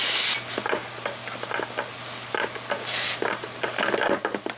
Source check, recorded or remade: recorded